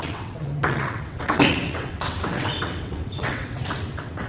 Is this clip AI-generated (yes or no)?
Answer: yes